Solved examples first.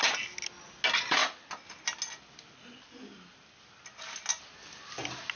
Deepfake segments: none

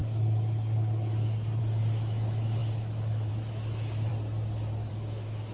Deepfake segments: 1.6-4.1 (autoencoder, DAC-VAE); 4.9-5.5

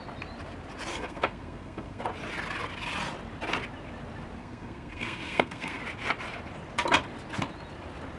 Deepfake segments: 0.9-2.0 (codec, SNAC); 4.4-5.8

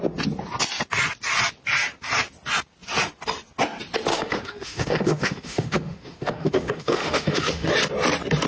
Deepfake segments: 4.1-7.7 (autoencoder, DAC-VAE)

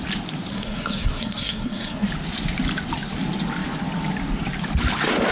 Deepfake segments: 0.5-2.1 (codec, SNAC)

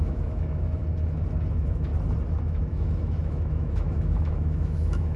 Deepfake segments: 0.0-0.8 (autoencoder, DAC-VAE); 1.5-1.9; 2.4-5.2

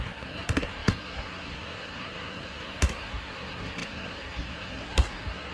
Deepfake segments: 0.0-5.5 (codec, SNAC)